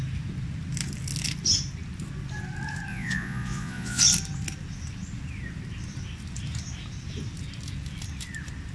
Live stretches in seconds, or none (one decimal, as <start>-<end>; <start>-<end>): 0.0-2.9; 4.0-8.7